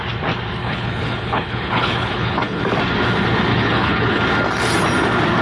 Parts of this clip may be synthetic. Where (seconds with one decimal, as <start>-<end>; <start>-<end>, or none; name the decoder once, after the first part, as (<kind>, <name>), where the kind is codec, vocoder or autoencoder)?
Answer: 0.6-2.6 (codec, HILCodec); 3.5-4.2